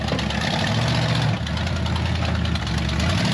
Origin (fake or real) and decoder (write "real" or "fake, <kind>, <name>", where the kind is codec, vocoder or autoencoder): real